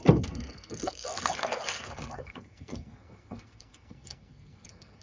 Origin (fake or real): fake